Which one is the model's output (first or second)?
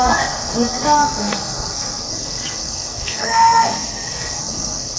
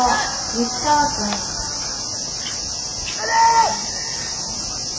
first